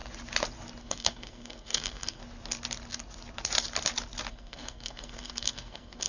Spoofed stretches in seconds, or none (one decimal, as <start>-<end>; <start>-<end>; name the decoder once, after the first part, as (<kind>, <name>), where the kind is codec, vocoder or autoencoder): 0.8-2.2 (codec, SNAC); 4.3-6.1